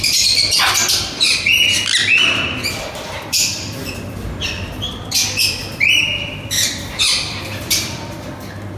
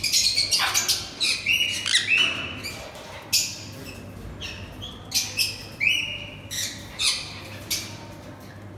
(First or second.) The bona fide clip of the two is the second